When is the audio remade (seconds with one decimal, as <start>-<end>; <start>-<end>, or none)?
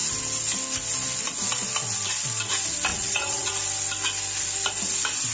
2.9-3.5